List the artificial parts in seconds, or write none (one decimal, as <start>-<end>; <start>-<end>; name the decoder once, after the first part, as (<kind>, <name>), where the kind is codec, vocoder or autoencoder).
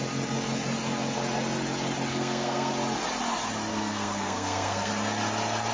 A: 2.1-2.7 (codec, SNAC); 3.7-4.9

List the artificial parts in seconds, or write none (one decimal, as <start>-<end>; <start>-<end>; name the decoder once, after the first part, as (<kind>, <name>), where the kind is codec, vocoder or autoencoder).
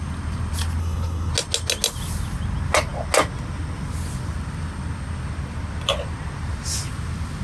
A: 0.8-1.3 (codec, SNAC)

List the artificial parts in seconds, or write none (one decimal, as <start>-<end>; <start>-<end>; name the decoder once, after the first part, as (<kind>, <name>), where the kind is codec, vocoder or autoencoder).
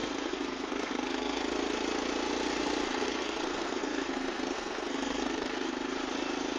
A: 0.0-1.4 (codec, SNAC); 2.9-5.7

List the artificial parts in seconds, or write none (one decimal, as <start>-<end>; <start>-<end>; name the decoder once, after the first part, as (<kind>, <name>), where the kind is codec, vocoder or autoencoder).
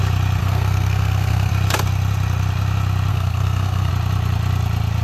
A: 0.4-1.5 (codec, SNAC); 3.1-3.9